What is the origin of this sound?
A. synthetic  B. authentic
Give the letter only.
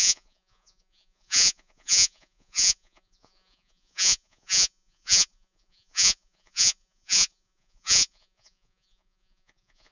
A